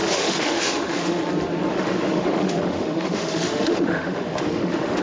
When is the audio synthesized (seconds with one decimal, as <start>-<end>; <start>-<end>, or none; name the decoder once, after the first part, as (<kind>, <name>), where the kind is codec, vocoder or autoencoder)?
0.0-1.2 (autoencoder, DAC-VAE); 1.7-5.0